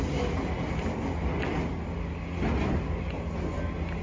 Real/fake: real